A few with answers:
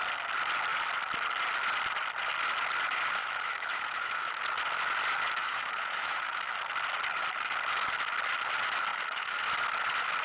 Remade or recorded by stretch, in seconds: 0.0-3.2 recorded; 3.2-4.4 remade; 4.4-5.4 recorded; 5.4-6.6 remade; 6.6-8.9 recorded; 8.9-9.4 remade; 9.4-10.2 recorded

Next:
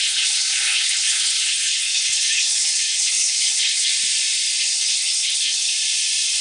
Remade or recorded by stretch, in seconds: 0.0-3.9 remade; 3.9-4.6 recorded; 4.6-5.7 remade; 5.7-6.4 recorded

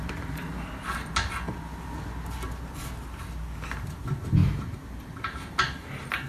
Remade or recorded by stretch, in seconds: 0.0-4.4 recorded; 4.4-5.5 remade; 5.5-6.3 recorded

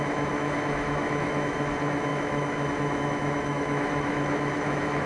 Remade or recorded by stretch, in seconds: 0.0-5.1 remade

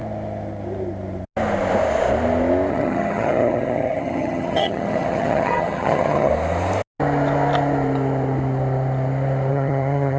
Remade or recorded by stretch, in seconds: 0.0-2.7 recorded; 2.7-6.3 remade; 6.3-9.5 recorded; 9.5-10.2 remade

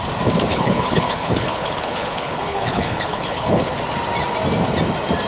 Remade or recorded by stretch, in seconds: 0.0-0.5 recorded; 0.5-3.7 remade; 3.7-5.3 recorded

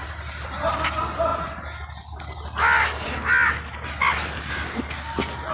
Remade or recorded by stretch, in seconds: 0.0-5.5 recorded